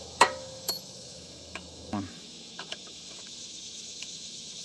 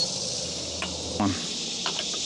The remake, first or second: first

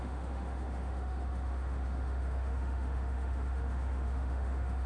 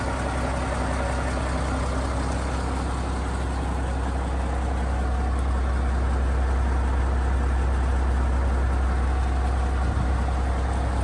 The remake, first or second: first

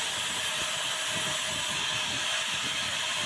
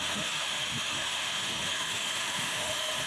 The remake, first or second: second